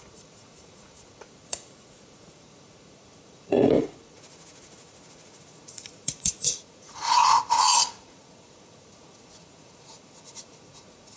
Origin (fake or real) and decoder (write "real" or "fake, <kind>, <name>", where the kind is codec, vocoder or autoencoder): fake, vocoder, Vocos